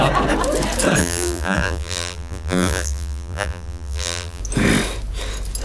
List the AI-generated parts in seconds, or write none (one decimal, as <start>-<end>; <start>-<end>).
1.0-4.4